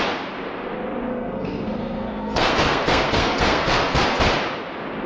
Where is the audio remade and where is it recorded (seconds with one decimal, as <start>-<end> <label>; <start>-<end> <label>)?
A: 0.0-1.1 recorded; 1.1-4.2 remade; 4.2-5.1 recorded